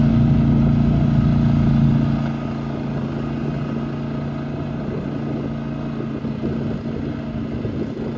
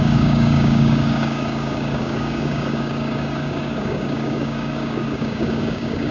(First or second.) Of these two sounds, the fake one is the second